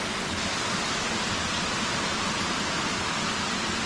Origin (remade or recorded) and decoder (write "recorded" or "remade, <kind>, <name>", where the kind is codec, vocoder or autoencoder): recorded